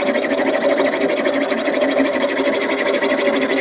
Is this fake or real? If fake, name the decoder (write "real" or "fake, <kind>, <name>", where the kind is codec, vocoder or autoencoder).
real